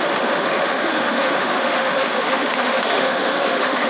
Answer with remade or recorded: remade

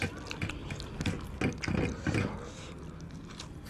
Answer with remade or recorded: recorded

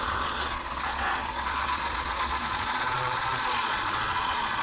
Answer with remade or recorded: remade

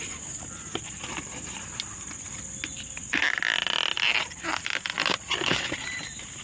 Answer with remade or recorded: recorded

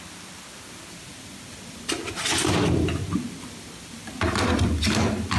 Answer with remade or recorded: recorded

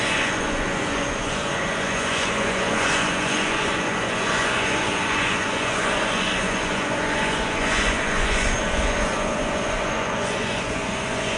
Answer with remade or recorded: remade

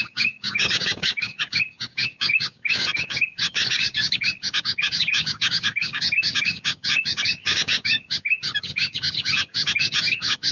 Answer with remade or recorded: remade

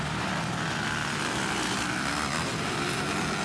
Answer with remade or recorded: recorded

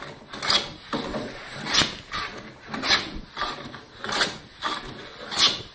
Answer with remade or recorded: recorded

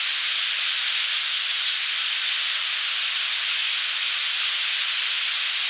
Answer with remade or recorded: recorded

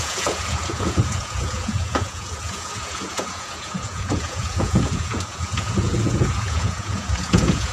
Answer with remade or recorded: remade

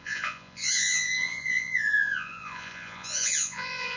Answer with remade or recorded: remade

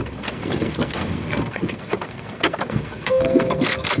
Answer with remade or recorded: remade